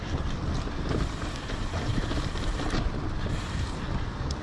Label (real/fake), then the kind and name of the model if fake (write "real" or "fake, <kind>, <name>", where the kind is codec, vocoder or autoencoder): real